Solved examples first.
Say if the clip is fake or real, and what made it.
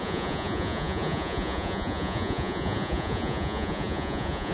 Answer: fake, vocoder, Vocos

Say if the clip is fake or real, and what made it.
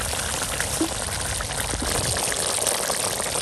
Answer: real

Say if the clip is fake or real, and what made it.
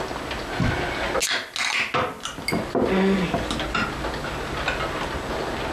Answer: real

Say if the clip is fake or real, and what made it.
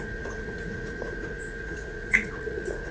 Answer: fake, vocoder, Vocos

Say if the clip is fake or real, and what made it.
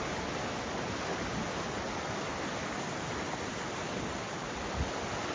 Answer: real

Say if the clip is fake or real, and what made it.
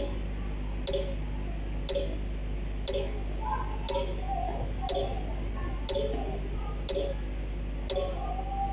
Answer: real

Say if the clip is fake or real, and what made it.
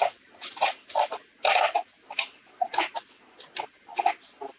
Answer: real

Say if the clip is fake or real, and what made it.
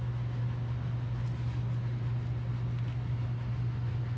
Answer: real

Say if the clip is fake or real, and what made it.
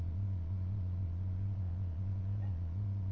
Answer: fake, vocoder, Vocos